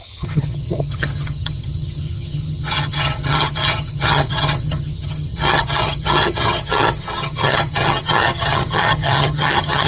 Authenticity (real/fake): fake